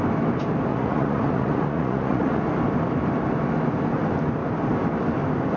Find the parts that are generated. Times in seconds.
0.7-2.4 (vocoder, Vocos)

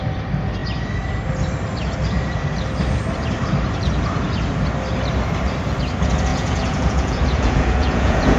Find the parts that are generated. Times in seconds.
6.3-8.4 (vocoder, Vocos)

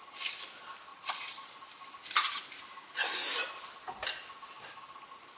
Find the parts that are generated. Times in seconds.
0.9-1.5 (vocoder, Vocos)

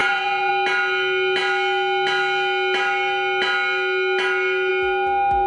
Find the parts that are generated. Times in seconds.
0.0-0.5 (vocoder, Vocos)

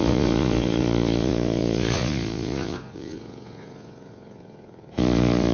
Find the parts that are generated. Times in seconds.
0.0-5.5 (vocoder, Vocos)

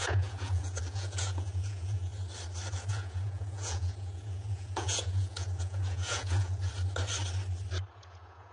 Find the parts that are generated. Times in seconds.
0.0-2.1 (vocoder, Vocos); 2.9-6.7; 7.9-8.5